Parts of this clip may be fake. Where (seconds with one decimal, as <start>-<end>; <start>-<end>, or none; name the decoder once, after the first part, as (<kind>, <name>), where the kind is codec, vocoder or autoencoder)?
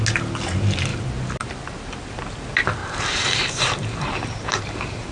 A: 2.8-5.1 (vocoder, BigVGAN v2)